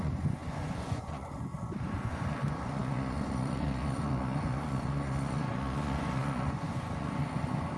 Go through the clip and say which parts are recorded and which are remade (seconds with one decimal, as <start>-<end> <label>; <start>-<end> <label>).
0.0-1.5 remade; 1.5-2.0 recorded; 2.0-7.8 remade